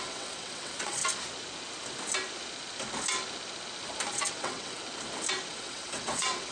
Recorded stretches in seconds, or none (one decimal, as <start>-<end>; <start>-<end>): 1.0-4.3; 4.8-5.5